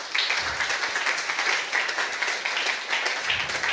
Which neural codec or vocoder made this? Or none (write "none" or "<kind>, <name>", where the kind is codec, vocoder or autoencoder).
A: none